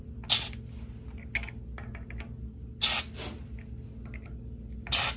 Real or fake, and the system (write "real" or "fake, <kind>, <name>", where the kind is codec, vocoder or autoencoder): real